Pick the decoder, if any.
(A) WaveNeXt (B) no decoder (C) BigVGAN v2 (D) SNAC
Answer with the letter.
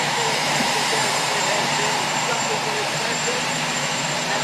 C